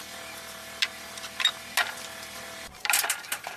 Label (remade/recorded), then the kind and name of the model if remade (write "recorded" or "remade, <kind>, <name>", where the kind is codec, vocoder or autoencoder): recorded